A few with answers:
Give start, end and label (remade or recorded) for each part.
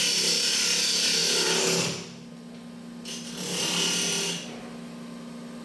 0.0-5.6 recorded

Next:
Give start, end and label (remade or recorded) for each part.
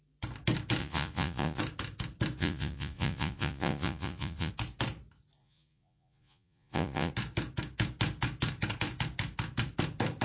0.0-0.8 recorded; 0.8-1.6 remade; 1.6-2.4 recorded; 2.4-4.5 remade; 4.5-5.4 recorded; 5.4-7.1 remade; 7.1-10.2 recorded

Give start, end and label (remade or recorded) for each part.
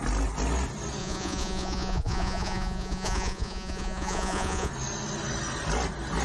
0.0-1.0 recorded; 1.0-4.7 remade; 4.7-6.2 recorded